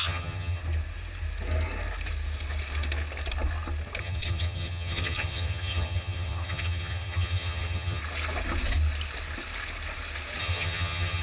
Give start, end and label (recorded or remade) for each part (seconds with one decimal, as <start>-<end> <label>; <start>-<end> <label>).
0.0-0.6 remade; 0.6-4.0 recorded; 4.0-8.0 remade; 8.0-10.4 recorded; 10.4-11.2 remade

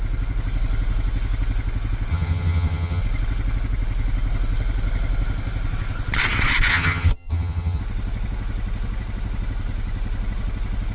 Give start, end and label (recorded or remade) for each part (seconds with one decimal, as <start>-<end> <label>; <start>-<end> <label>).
0.0-2.1 recorded; 2.1-3.0 remade; 3.0-6.7 recorded; 6.7-7.8 remade; 7.8-10.9 recorded

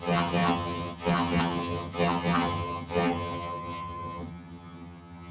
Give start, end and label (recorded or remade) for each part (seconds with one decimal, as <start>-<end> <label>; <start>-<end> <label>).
0.0-5.3 remade